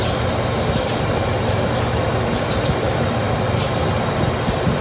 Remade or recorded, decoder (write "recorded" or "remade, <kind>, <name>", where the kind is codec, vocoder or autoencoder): recorded